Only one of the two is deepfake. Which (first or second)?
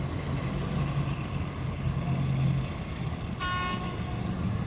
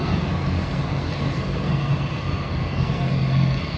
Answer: second